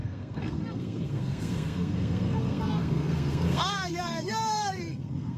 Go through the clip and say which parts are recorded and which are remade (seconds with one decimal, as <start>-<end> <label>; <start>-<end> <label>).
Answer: 0.0-5.4 remade